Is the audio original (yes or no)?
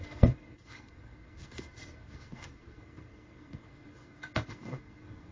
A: no